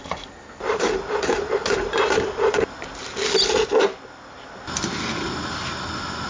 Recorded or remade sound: recorded